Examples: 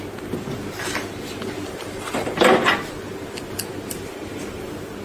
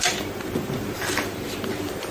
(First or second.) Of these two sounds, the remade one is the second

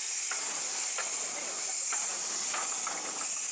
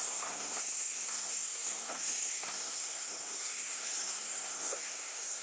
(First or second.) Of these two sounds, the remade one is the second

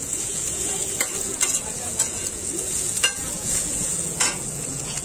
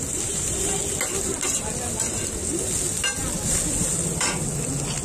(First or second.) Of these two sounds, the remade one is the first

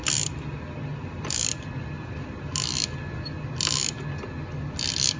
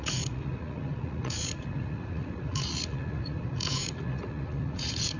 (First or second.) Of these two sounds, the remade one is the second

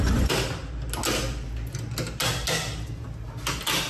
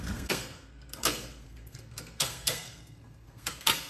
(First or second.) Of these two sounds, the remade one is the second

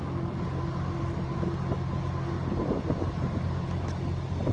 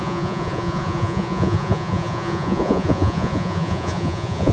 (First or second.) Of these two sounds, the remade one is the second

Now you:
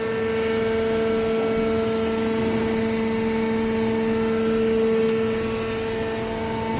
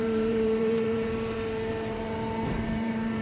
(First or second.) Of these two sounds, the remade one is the second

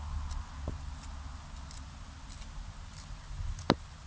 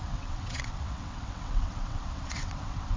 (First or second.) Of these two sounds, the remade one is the second